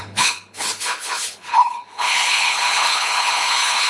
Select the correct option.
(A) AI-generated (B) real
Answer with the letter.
A